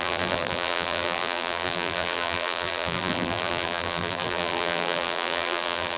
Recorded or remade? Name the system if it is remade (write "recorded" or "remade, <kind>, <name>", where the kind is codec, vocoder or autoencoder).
remade, vocoder, BigVGAN v2